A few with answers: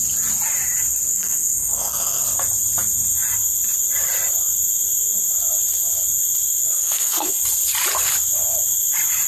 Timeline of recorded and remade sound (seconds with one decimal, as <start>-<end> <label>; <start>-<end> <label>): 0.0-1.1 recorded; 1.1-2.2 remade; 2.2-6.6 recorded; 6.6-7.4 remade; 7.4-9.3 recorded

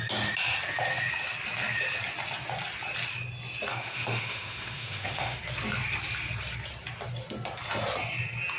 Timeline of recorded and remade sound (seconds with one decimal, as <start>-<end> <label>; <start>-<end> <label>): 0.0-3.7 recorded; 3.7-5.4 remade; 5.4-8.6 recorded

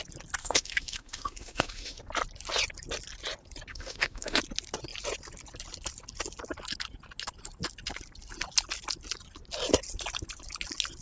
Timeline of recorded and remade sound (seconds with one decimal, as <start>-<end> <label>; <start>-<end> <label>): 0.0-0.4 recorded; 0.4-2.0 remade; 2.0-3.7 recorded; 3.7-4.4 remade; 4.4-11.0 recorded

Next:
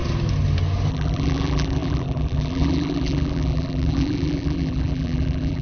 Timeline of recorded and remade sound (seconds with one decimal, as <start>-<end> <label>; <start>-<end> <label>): 0.0-0.9 recorded; 0.9-5.6 remade

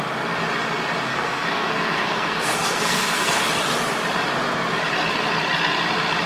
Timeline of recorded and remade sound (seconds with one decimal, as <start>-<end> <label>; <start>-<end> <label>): 0.0-1.1 recorded; 1.1-3.4 remade; 3.4-6.3 recorded

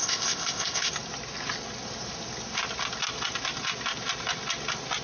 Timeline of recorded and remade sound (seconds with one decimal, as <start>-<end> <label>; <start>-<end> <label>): 0.0-0.9 remade; 0.9-5.0 recorded

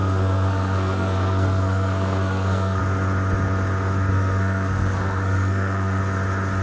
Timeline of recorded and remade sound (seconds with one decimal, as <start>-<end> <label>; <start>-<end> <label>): 0.0-2.8 remade; 2.8-4.1 recorded; 4.1-6.0 remade; 6.0-6.6 recorded

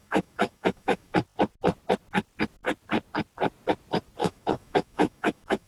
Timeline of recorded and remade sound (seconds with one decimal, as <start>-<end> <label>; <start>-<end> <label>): 0.0-1.2 remade; 1.2-4.2 recorded; 4.2-5.7 remade